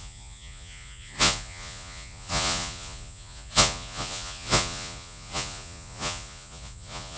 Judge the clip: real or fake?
fake